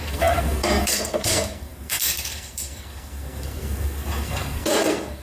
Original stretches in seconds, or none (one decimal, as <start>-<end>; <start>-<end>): none